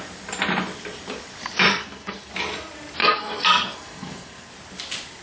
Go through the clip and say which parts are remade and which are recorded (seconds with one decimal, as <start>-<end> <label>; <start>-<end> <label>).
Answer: 0.0-1.7 recorded; 1.7-2.3 remade; 2.3-3.0 recorded; 3.0-4.5 remade; 4.5-5.2 recorded